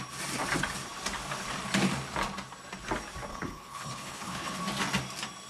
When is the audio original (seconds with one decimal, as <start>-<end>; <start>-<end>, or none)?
0.0-3.3; 4.6-5.5